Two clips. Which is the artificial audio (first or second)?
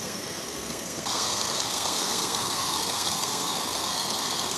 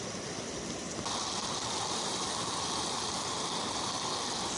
first